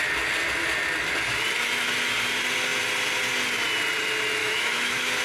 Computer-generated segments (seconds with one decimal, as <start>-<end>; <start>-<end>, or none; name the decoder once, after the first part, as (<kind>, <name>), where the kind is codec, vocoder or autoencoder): 4.4-5.2 (autoencoder, DAC-VAE)